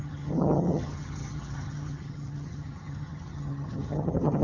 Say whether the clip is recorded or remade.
remade